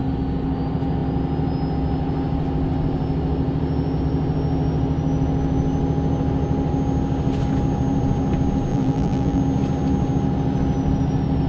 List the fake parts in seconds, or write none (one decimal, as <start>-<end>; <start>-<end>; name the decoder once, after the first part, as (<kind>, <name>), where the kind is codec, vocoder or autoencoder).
8.7-9.4 (vocoder, BigVGAN v2)